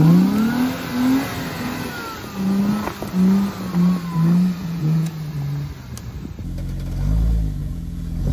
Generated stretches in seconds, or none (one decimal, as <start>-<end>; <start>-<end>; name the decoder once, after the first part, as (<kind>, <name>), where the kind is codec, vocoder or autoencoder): 4.6-5.1 (vocoder, Vocos); 7.6-8.3

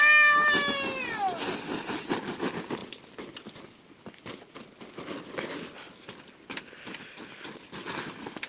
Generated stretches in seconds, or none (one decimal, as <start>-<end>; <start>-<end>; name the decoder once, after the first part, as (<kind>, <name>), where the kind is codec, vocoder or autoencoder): none

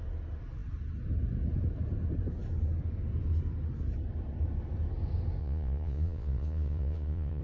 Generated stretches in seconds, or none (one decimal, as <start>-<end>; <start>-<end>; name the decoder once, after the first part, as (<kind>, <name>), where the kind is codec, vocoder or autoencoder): 5.4-7.4 (vocoder, Vocos)

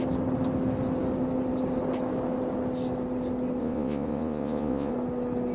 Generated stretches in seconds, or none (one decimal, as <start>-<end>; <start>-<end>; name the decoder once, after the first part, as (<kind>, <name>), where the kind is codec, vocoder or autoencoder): 3.6-4.9 (vocoder, Vocos)

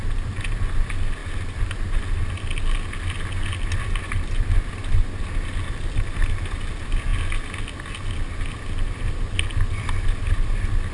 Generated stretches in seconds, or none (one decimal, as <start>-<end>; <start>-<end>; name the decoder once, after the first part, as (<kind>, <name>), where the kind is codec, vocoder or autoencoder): none

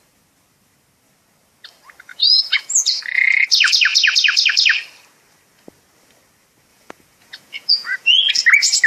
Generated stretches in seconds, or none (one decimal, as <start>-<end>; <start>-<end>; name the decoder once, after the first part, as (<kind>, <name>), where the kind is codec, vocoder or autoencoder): 2.1-3.0 (vocoder, Vocos); 6.7-8.3

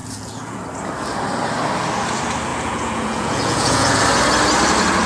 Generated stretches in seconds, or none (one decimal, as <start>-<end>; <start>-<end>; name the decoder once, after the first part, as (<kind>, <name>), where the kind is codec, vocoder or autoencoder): 0.0-0.6 (vocoder, Vocos); 2.5-4.0